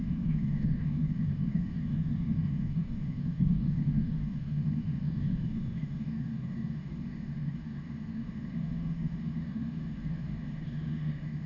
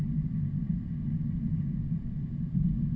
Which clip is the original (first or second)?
second